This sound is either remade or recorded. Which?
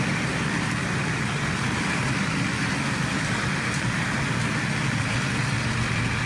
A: recorded